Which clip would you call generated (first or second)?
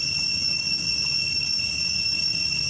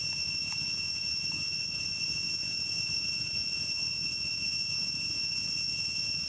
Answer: second